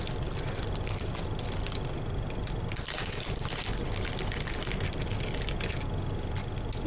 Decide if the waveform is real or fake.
real